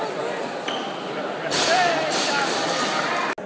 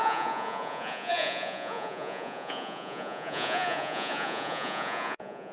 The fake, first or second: second